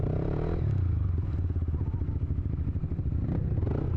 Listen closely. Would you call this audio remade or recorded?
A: recorded